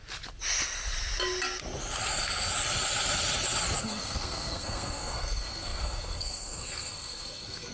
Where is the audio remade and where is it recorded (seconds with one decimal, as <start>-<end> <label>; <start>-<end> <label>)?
0.0-3.8 recorded; 3.8-7.7 remade

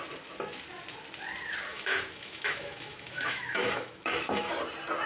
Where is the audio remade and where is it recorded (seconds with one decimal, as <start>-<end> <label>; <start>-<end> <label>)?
0.0-1.7 recorded; 1.7-4.5 remade; 4.5-5.1 recorded

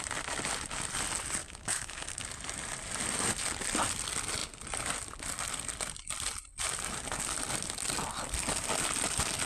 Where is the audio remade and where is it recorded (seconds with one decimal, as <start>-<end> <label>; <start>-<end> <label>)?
0.0-1.4 recorded; 1.4-2.2 remade; 2.2-9.5 recorded

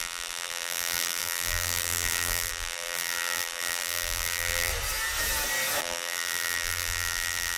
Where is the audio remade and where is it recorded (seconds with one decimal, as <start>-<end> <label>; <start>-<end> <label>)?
0.0-4.7 remade; 4.7-5.8 recorded; 5.8-7.6 remade